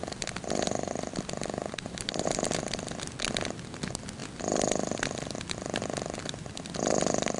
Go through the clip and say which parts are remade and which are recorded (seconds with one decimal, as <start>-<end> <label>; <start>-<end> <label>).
0.0-7.4 recorded